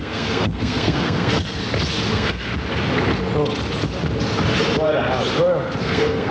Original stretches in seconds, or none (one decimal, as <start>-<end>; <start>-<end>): 1.6-2.1; 2.5-5.8